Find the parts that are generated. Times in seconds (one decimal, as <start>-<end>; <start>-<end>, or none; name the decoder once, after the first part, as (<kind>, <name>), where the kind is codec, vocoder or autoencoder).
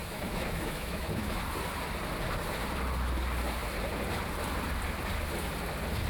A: 0.0-1.4 (autoencoder, DAC-VAE)